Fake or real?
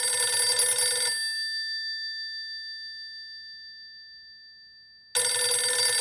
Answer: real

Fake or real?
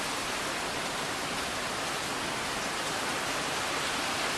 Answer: real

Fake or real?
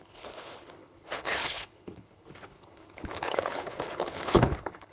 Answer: fake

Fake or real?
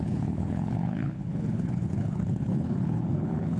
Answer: fake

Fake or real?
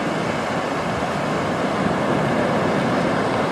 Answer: real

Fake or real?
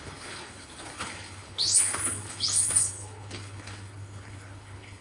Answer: fake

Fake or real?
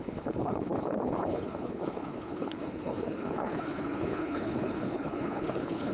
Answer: fake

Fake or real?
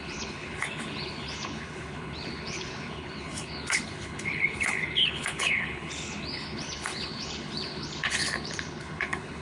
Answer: fake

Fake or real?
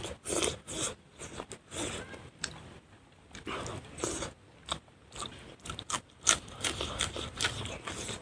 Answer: real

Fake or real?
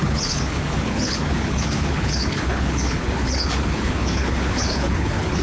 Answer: fake